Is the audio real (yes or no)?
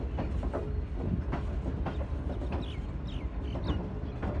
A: yes